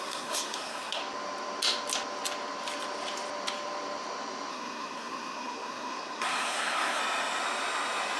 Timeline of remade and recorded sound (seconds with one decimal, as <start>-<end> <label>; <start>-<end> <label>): 0.0-1.0 remade; 1.0-4.5 recorded; 4.5-7.0 remade; 7.0-8.2 recorded